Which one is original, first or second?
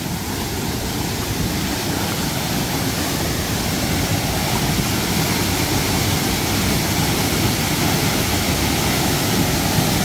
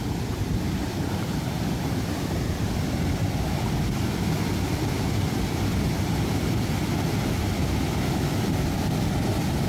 first